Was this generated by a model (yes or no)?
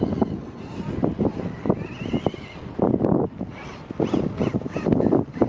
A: no